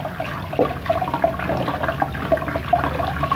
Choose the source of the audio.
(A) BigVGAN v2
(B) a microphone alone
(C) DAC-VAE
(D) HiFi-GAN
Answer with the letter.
A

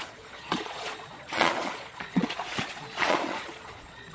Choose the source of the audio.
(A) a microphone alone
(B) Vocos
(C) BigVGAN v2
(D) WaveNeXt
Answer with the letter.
B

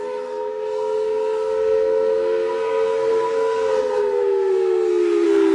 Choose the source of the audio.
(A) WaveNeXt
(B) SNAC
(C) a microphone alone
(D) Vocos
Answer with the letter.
B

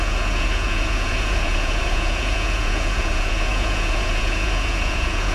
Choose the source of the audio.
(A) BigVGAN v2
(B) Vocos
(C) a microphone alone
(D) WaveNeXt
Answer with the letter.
B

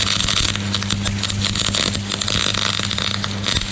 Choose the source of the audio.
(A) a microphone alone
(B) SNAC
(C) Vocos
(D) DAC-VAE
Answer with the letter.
A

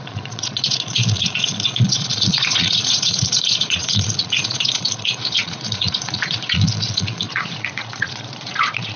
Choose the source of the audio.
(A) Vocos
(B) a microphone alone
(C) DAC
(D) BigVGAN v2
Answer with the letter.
A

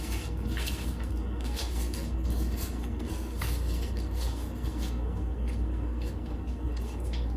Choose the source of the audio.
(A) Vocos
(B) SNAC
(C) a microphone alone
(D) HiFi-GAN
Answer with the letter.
B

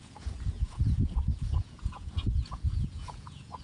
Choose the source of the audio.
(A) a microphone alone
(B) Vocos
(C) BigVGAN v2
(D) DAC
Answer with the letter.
B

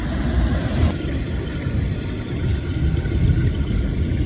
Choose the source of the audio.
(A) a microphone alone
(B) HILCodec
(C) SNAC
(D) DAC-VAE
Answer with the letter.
A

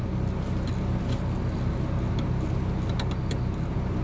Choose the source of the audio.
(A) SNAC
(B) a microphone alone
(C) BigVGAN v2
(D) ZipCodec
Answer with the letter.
B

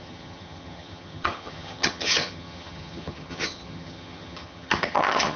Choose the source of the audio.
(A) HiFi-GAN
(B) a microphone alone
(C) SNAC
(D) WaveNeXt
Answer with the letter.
A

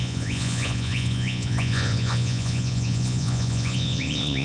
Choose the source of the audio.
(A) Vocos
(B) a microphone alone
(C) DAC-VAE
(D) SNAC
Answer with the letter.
A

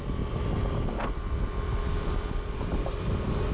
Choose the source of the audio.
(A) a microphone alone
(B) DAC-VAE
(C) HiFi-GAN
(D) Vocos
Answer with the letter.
A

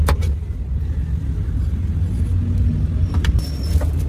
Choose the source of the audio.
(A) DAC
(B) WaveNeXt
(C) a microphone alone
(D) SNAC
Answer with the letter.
C